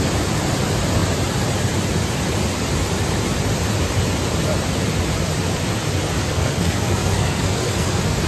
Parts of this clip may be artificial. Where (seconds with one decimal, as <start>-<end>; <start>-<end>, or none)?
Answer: 6.2-8.3